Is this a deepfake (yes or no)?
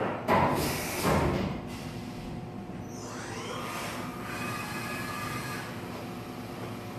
no